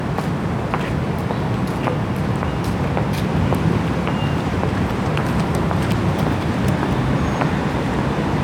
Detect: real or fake fake